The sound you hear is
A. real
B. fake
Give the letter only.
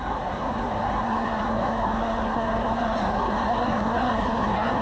B